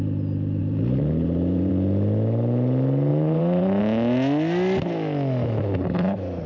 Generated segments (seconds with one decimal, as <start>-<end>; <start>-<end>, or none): 0.6-1.7; 3.1-3.8